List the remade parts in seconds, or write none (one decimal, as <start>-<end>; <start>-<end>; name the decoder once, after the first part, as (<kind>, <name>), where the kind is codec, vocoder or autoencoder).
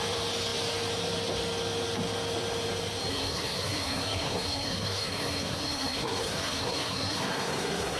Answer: 3.1-8.0 (codec, SNAC)